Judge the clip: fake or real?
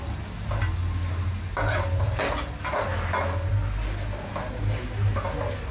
real